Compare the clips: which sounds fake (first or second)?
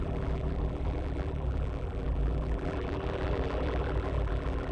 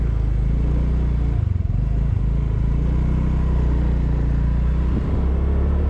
first